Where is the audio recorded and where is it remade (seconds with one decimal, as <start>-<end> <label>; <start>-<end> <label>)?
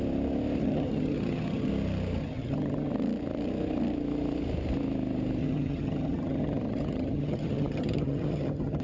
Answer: 0.0-0.6 recorded; 0.6-1.7 remade; 1.7-2.2 recorded; 2.2-2.9 remade; 2.9-5.4 recorded; 5.4-8.8 remade